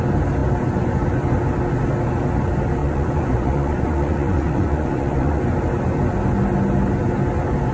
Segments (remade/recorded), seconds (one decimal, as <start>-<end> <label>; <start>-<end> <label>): 0.0-2.8 recorded; 2.8-5.4 remade; 5.4-7.7 recorded